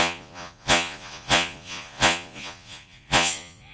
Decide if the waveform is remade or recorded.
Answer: remade